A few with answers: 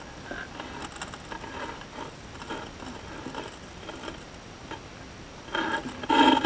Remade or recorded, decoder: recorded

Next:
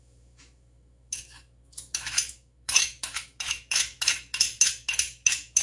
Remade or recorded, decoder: remade, autoencoder, DAC-VAE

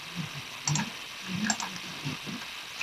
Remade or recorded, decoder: recorded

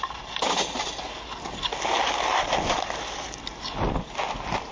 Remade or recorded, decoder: recorded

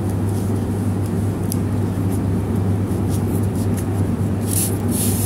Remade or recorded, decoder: recorded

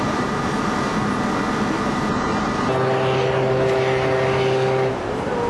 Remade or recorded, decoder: recorded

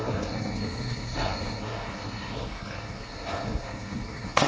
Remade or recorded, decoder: remade, codec, SNAC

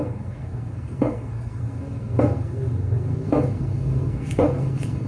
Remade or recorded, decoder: remade, codec, SNAC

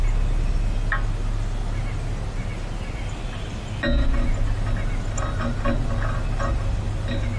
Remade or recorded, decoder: recorded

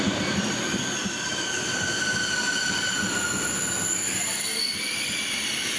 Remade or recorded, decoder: recorded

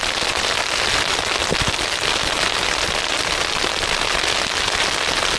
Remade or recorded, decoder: recorded